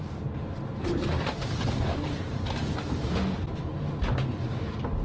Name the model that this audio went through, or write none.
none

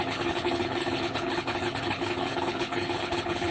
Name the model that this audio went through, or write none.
codec, HILCodec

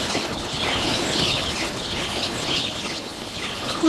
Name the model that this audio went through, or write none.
codec, HILCodec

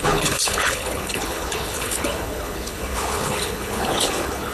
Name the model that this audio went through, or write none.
codec, HILCodec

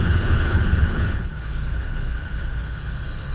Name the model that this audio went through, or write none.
codec, HILCodec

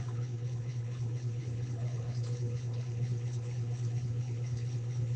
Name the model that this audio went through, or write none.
codec, HILCodec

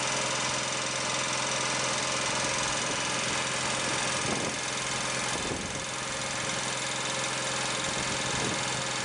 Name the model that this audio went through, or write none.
none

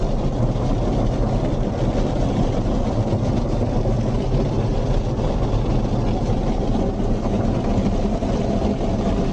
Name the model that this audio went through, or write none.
none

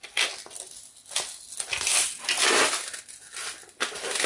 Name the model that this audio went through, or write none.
none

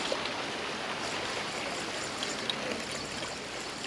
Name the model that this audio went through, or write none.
none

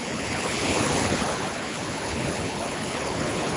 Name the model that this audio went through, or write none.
codec, HILCodec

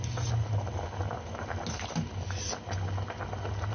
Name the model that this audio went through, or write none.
none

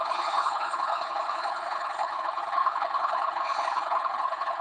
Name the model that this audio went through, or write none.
codec, HILCodec